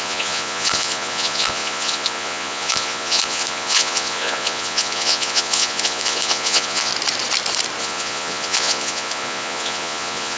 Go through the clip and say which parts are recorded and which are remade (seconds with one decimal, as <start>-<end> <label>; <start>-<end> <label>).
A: 0.0-6.9 remade; 6.9-7.8 recorded; 7.8-10.4 remade